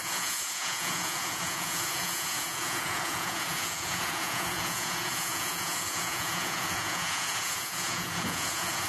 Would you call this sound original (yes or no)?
no